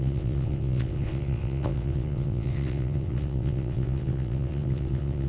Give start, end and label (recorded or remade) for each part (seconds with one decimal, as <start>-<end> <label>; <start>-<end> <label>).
0.0-5.3 remade